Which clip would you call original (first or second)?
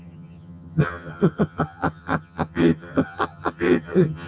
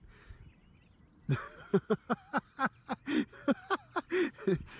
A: second